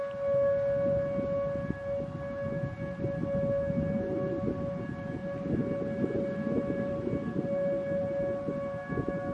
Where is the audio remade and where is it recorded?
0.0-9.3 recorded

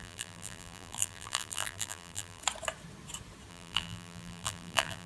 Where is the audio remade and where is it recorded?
0.0-2.4 remade; 2.4-3.5 recorded; 3.5-5.1 remade

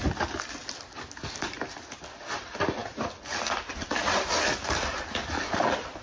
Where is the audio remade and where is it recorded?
0.0-6.0 recorded